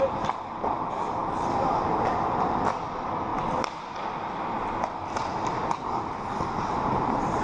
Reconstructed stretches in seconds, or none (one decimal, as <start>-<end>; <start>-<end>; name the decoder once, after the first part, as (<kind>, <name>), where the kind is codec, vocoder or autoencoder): none